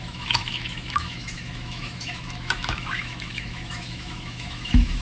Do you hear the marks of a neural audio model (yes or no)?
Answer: yes